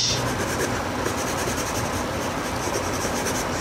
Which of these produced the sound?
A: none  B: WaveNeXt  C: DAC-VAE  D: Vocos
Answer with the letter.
A